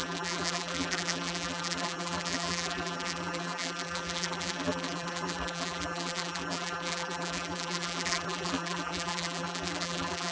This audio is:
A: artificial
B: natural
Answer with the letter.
A